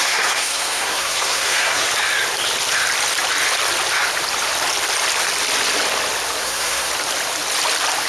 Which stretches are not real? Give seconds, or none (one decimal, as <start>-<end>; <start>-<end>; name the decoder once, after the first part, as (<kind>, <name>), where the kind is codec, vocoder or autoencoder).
0.0-1.9 (codec, SNAC); 6.4-6.9

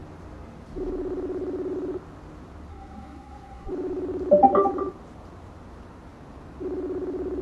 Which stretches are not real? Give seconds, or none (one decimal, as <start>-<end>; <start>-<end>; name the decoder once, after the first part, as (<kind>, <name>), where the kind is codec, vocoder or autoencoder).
2.7-3.7 (codec, SNAC)

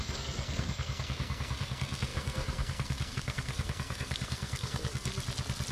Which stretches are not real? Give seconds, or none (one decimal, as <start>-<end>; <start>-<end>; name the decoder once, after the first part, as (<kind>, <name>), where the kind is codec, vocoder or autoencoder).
0.0-5.1 (codec, SNAC)

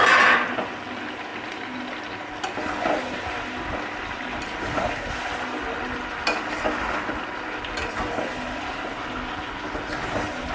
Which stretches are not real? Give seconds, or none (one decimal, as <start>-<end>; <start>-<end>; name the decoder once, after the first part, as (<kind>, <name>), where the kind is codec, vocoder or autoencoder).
none

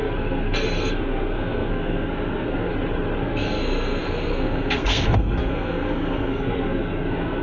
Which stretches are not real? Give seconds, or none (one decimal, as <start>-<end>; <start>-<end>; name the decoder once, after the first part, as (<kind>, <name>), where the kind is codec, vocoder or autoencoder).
0.0-2.7 (codec, SNAC); 3.2-7.4

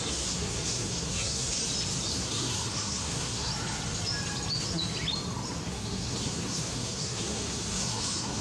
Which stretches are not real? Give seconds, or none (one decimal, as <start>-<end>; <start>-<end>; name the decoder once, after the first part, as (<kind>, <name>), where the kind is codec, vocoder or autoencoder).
0.0-1.6 (codec, SNAC); 2.1-3.5; 5.7-8.4

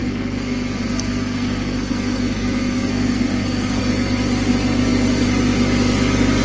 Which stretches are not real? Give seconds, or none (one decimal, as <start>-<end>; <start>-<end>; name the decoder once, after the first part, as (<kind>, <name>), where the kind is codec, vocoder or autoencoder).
0.0-3.8 (codec, SNAC)